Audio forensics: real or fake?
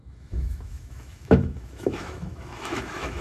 fake